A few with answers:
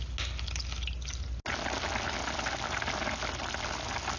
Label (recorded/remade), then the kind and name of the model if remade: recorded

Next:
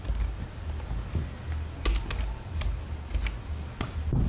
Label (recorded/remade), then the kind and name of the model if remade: recorded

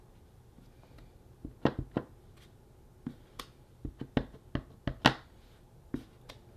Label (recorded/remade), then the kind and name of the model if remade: recorded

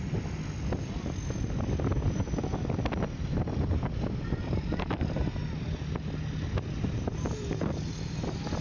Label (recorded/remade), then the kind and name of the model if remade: recorded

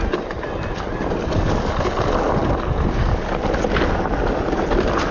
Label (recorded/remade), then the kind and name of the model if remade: recorded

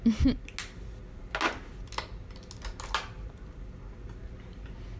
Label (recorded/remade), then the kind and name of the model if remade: recorded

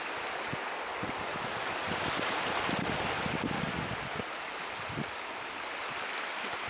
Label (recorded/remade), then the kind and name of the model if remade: recorded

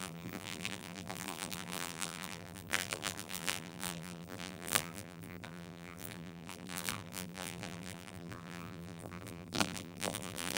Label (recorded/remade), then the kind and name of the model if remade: remade, vocoder, BigVGAN v2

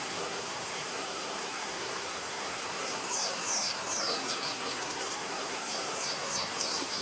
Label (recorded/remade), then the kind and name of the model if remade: remade, codec, SNAC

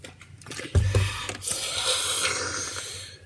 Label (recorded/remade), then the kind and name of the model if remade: recorded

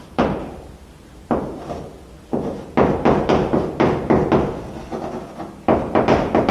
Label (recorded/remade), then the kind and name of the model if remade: recorded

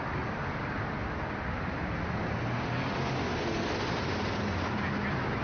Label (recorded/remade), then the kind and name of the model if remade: recorded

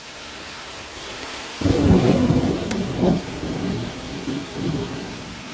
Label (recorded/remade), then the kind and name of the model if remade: remade, codec, SNAC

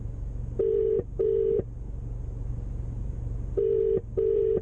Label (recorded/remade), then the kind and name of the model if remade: remade, vocoder, BigVGAN v2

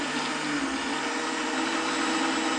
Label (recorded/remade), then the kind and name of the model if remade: recorded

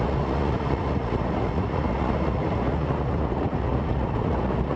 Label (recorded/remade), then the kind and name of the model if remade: remade, vocoder, Vocos